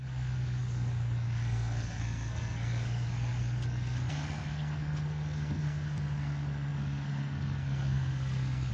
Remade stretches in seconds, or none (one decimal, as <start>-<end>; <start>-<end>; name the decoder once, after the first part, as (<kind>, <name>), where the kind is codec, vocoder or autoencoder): 0.0-8.7 (codec, SNAC)